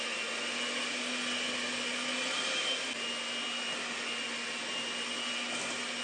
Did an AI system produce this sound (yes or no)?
no